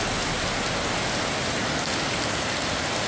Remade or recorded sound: recorded